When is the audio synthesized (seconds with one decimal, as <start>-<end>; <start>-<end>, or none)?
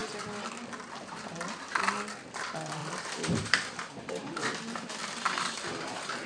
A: 2.8-4.9